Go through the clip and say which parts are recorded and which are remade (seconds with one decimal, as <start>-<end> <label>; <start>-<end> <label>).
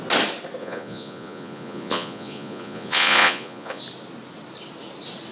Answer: 0.0-0.6 recorded; 0.6-3.8 remade; 3.8-5.3 recorded